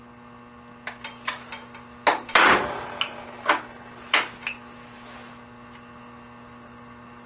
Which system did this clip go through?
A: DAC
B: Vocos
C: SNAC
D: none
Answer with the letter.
D